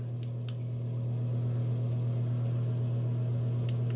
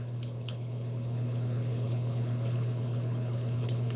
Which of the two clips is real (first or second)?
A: first